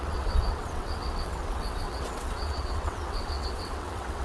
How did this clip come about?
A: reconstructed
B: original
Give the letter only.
A